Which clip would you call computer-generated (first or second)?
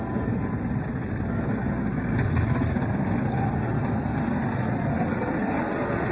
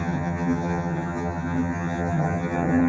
second